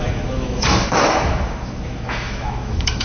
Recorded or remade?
remade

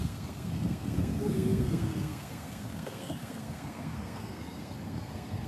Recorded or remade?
remade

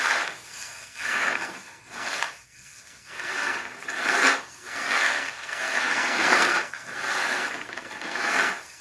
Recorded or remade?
remade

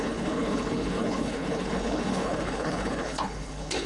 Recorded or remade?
remade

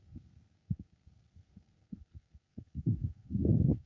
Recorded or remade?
remade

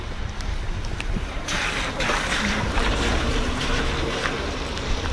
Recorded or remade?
remade